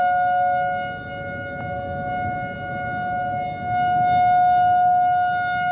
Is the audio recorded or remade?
recorded